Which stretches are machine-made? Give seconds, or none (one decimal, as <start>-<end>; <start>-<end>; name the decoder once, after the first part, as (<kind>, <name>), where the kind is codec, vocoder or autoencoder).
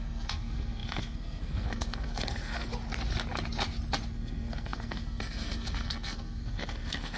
0.0-2.7 (codec, SNAC); 4.1-7.2